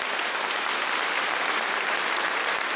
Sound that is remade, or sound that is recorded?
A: recorded